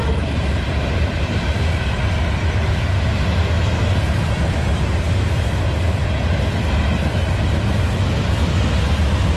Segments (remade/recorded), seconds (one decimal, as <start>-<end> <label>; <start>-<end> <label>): 0.0-2.0 remade; 2.0-9.4 recorded